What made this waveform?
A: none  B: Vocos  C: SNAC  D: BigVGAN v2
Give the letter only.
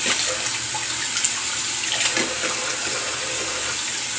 A